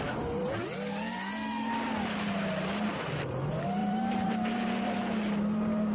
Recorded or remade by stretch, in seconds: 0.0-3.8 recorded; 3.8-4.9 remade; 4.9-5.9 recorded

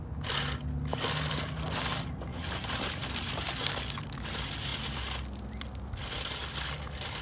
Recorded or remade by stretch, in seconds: 0.0-2.3 recorded; 2.3-2.9 remade; 2.9-7.2 recorded